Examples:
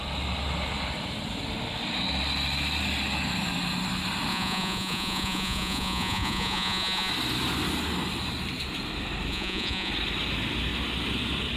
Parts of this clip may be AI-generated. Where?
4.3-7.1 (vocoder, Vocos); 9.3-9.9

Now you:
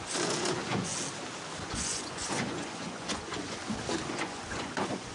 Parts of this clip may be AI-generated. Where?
0.0-0.9 (vocoder, Vocos); 1.6-3.6; 4.1-5.1

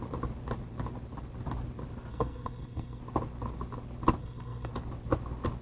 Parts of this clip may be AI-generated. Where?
2.1-3.0 (codec, SNAC); 4.2-4.7

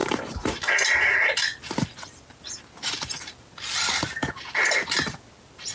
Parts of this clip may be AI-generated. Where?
0.0-1.3 (vocoder, BigVGAN v2)

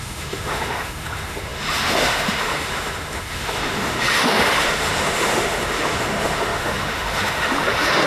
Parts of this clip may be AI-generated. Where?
0.0-8.1 (autoencoder, DAC-VAE)

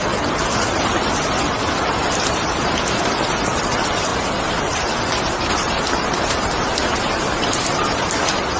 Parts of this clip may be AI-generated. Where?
none